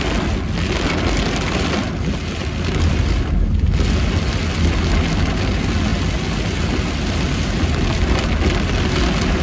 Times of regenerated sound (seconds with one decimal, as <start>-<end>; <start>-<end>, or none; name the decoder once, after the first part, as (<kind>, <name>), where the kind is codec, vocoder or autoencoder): none